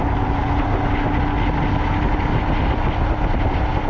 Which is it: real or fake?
real